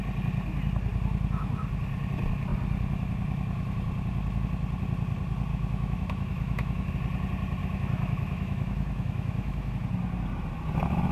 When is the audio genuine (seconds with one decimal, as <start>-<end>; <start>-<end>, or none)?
0.0-5.5; 6.9-7.6; 9.7-11.1